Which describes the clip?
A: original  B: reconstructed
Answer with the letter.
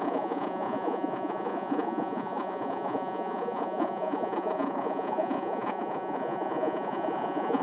B